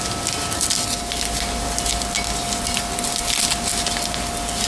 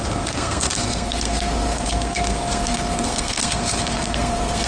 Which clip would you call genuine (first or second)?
first